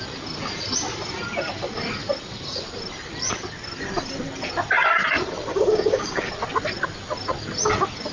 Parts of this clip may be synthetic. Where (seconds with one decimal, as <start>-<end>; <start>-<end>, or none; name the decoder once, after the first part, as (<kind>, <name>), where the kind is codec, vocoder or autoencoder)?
5.5-6.3 (codec, DAC)